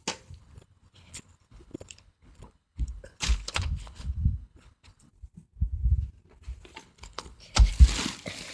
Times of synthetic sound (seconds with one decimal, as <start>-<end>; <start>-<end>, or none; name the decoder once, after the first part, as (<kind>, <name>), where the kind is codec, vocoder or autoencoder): 0.4-5.1 (codec, HILCodec); 6.8-7.7